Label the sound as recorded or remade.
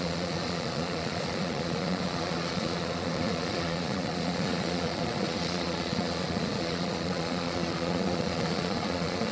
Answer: remade